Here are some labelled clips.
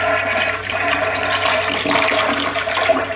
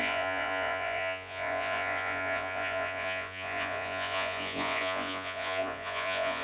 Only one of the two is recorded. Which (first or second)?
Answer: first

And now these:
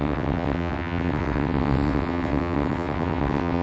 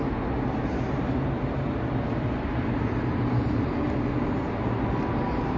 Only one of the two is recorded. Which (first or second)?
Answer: second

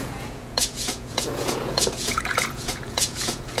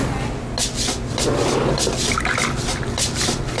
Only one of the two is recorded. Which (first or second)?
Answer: second